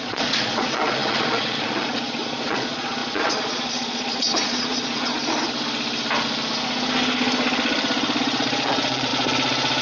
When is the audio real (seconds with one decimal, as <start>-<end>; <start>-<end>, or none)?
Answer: 5.1-8.2; 9.1-9.8